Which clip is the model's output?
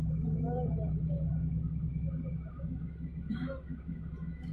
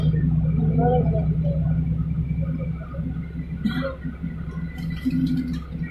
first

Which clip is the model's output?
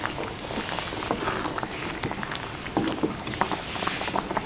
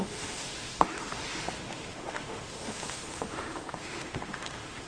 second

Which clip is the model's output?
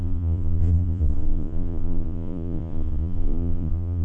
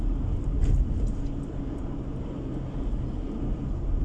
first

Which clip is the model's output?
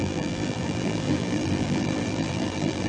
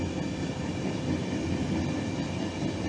first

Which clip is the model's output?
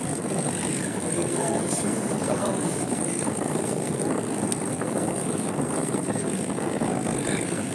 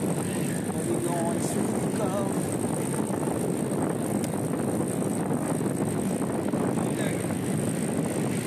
first